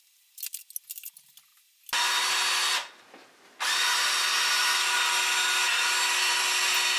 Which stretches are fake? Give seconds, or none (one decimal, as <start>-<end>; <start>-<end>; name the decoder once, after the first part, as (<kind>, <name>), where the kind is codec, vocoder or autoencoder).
none